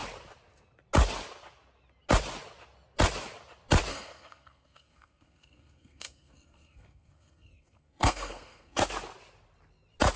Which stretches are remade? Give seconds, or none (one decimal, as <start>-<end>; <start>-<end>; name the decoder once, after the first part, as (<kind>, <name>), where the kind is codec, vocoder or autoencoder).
3.9-8.8 (codec, SNAC)